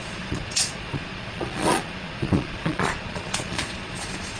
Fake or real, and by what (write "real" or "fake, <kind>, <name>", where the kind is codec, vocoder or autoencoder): fake, vocoder, Vocos